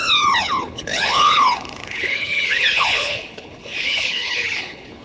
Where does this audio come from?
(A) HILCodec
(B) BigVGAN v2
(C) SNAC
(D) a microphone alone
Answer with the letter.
A